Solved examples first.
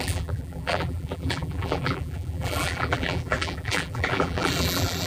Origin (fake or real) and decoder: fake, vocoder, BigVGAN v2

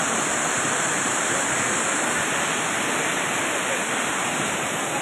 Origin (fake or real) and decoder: fake, vocoder, BigVGAN v2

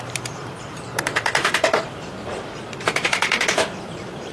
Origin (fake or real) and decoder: fake, vocoder, BigVGAN v2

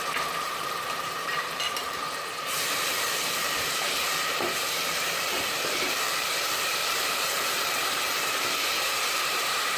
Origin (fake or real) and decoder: fake, vocoder, BigVGAN v2